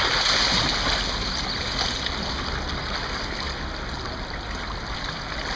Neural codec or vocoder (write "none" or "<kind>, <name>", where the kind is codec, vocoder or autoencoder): none